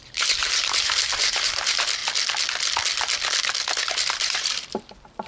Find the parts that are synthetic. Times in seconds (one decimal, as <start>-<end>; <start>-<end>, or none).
0.0-2.0; 3.8-5.3